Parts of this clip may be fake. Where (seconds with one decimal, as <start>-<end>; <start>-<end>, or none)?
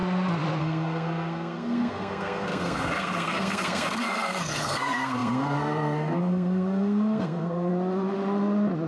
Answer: 0.6-7.7